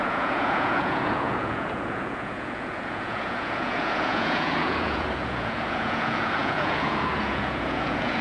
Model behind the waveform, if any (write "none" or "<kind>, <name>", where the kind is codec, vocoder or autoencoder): vocoder, Vocos